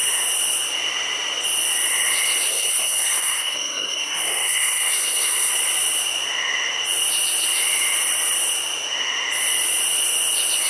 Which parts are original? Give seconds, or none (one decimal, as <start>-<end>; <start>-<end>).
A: 0.0-2.5; 5.5-10.7